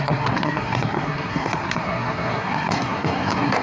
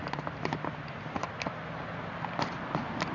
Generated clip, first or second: first